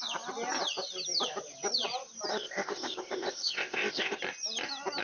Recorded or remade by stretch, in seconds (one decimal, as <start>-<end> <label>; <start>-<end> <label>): 0.0-2.3 recorded; 2.3-4.2 remade; 4.2-5.0 recorded